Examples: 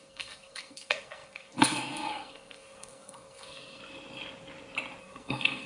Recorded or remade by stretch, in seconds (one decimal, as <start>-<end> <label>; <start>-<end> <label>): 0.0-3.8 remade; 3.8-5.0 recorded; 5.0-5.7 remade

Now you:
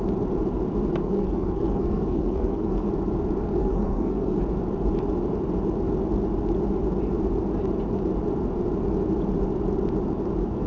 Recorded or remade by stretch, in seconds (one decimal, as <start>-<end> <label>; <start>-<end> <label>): 0.0-1.0 recorded; 1.0-2.9 remade; 2.9-3.6 recorded; 3.6-4.4 remade; 4.4-10.7 recorded

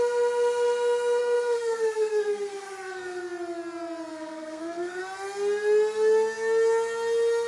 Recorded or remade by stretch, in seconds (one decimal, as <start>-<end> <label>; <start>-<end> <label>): 0.0-1.2 recorded; 1.2-3.2 remade; 3.2-4.1 recorded; 4.1-5.0 remade; 5.0-7.5 recorded

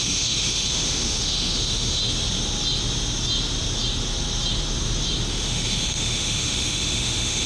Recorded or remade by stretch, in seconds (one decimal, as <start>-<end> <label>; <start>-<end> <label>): 0.0-2.0 remade; 2.0-5.3 recorded; 5.3-7.5 remade

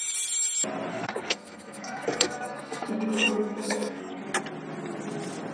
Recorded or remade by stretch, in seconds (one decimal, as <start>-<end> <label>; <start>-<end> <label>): 0.0-0.9 recorded; 0.9-4.2 remade; 4.2-5.5 recorded

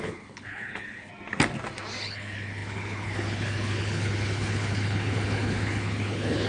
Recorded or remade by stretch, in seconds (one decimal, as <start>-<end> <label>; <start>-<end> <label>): 0.0-1.1 remade; 1.1-2.0 recorded; 2.0-6.5 remade

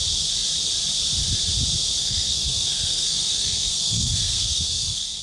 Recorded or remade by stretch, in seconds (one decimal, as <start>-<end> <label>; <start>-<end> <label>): 0.0-2.0 recorded; 2.0-5.2 remade

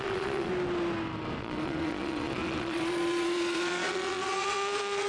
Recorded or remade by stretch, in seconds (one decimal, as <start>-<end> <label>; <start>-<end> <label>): 0.0-0.5 remade; 0.5-1.4 recorded; 1.4-5.1 remade